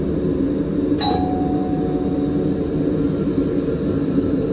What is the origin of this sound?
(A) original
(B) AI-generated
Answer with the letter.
A